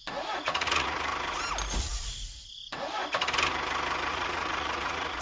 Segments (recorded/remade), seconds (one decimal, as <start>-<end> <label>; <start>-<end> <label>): 0.0-1.1 remade; 1.1-1.8 recorded; 1.8-3.0 remade; 3.0-4.1 recorded; 4.1-5.2 remade